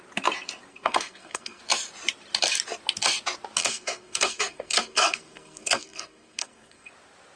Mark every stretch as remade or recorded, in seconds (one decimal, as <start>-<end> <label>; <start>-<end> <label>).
0.0-0.7 recorded; 0.7-1.6 remade; 1.6-3.6 recorded; 3.6-6.9 remade; 6.9-7.4 recorded